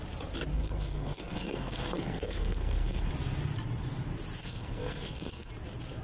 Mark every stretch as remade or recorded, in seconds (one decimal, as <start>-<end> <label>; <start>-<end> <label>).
0.0-0.5 recorded; 0.5-3.1 remade; 3.1-4.4 recorded; 4.4-5.5 remade; 5.5-6.0 recorded